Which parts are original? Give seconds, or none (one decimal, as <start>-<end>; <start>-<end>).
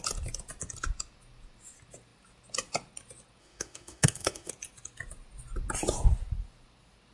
0.0-3.4; 4.5-7.1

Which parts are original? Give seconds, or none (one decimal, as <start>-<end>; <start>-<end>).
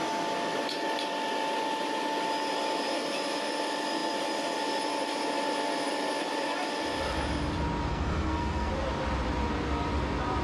0.0-7.9; 8.7-10.4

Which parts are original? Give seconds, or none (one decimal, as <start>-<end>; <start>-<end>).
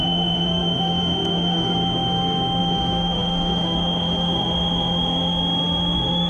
none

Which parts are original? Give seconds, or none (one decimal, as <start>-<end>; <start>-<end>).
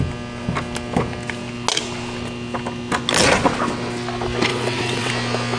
0.0-4.5; 5.1-5.6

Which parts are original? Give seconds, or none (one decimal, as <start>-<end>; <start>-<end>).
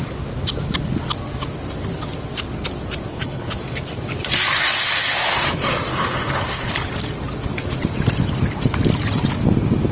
0.0-3.1; 3.6-4.8; 5.4-5.9; 6.7-9.9